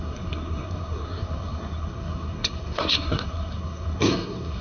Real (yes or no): no